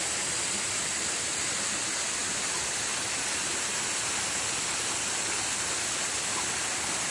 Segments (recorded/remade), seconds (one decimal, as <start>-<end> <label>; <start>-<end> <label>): 0.0-7.1 recorded